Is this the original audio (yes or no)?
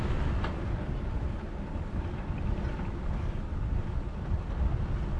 yes